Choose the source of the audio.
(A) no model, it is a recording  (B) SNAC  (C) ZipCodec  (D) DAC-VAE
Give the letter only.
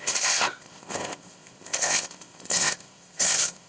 C